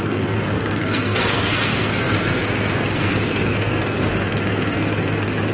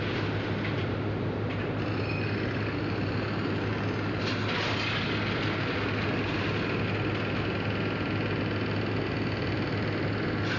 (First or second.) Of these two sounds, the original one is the second